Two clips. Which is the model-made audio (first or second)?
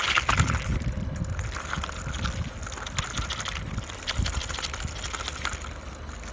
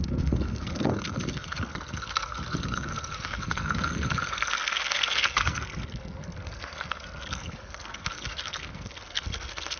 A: second